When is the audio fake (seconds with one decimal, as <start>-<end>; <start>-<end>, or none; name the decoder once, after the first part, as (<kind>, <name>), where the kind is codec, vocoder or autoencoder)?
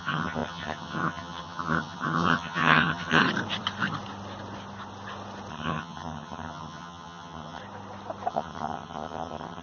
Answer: 0.0-3.2 (vocoder, HiFi-GAN); 5.5-7.6; 8.3-9.6